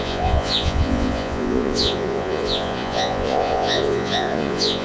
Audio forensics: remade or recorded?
remade